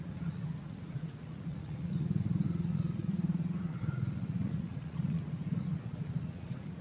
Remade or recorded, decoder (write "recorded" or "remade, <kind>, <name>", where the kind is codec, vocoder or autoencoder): remade, vocoder, Vocos